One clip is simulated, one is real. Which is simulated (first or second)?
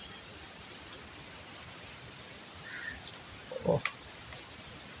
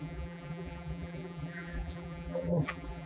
second